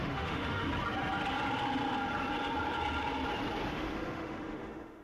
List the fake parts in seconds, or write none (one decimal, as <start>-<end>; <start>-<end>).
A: 0.0-0.7; 3.7-5.0